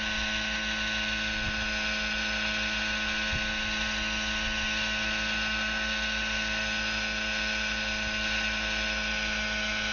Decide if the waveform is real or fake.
real